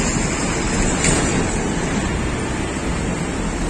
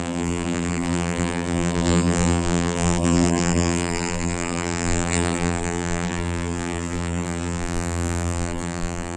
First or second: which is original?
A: first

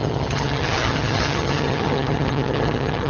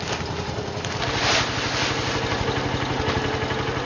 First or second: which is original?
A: second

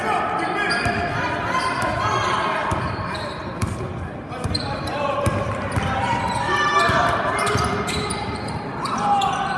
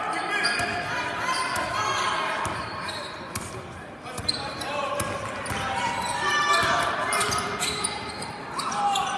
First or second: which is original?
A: second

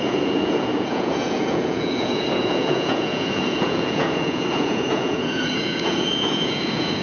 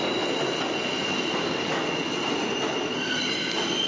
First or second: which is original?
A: second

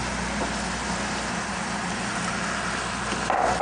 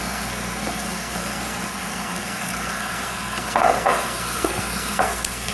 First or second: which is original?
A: first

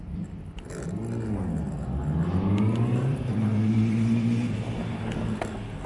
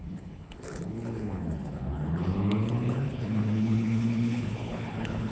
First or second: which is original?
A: first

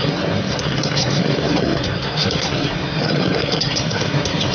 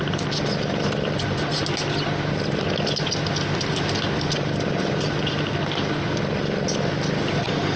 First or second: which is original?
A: second